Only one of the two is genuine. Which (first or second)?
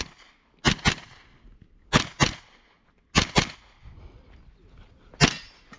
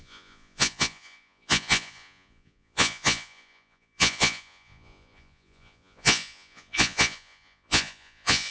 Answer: first